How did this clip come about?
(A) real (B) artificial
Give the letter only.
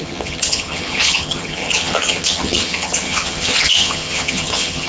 B